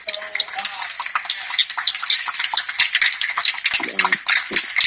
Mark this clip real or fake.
real